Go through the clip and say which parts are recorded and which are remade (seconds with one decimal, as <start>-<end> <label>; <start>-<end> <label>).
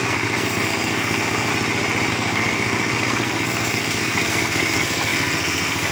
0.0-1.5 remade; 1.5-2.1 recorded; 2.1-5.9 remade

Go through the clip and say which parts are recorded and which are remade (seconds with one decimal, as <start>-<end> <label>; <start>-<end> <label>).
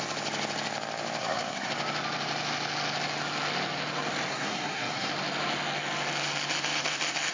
0.0-1.2 recorded; 1.2-1.7 remade; 1.7-4.3 recorded; 4.3-5.1 remade; 5.1-7.3 recorded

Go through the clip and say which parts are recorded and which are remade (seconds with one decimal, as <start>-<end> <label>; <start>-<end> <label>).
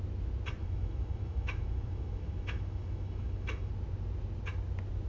0.0-0.6 recorded; 0.6-3.7 remade; 3.7-5.1 recorded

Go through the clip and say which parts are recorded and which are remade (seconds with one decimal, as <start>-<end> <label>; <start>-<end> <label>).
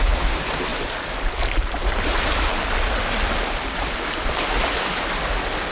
0.0-1.8 recorded; 1.8-2.5 remade; 2.5-5.7 recorded